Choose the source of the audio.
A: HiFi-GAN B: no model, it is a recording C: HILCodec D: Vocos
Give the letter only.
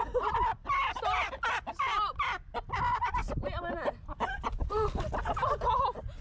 B